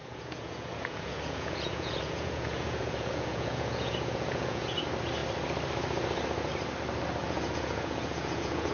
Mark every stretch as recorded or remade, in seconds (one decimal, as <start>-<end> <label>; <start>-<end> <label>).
0.0-4.8 remade; 4.8-7.2 recorded; 7.2-8.7 remade